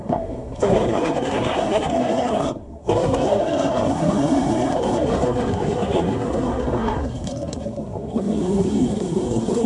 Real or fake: fake